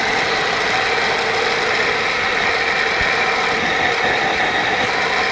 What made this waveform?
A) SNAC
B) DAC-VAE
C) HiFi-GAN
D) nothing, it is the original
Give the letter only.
D